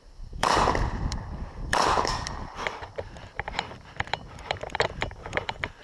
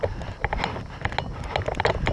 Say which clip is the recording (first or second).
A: second